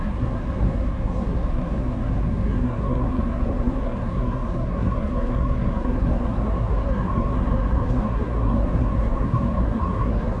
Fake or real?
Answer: fake